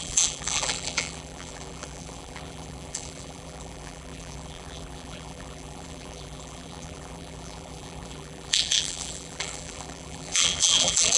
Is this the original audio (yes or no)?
no